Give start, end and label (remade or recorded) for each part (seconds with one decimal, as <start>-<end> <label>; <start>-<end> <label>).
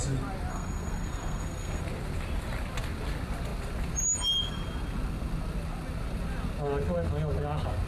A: 0.0-0.5 recorded; 0.5-1.8 remade; 1.8-7.9 recorded